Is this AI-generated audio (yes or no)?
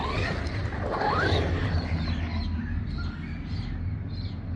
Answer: no